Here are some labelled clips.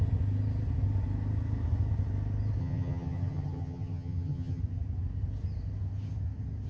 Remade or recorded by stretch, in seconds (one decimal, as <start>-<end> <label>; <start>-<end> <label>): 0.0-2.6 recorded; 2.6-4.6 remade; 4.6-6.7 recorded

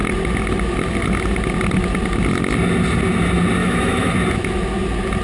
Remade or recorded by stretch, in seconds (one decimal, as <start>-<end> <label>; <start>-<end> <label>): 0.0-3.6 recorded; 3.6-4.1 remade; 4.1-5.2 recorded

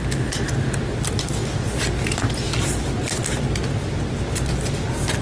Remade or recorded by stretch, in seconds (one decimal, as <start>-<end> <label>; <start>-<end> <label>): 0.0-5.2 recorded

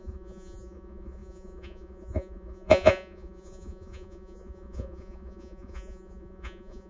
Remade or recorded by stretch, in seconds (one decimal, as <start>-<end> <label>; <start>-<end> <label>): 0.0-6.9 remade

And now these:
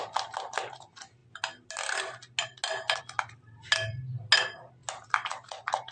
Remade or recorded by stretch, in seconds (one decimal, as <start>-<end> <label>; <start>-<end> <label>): 0.0-5.9 recorded

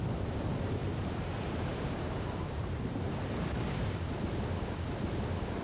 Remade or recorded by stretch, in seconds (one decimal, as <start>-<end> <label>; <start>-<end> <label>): 0.0-0.8 recorded; 0.8-4.2 remade; 4.2-5.6 recorded